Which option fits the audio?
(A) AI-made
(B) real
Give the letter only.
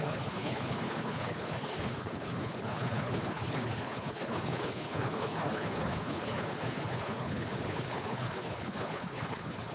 A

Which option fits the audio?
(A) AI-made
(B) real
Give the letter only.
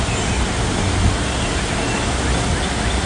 B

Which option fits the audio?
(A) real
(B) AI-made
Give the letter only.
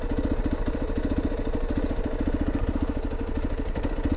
A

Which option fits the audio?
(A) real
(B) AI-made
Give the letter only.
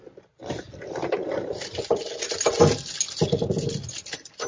A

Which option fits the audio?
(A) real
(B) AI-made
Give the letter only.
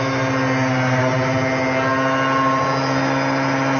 A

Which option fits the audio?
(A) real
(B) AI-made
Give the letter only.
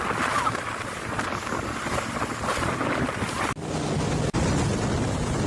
A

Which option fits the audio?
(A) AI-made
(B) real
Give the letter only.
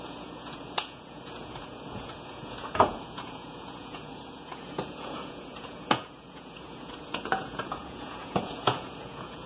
A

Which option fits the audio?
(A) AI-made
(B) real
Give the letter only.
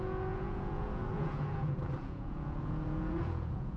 A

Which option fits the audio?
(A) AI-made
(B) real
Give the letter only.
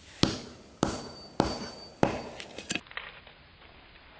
B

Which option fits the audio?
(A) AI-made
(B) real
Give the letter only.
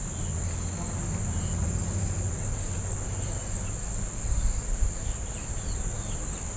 B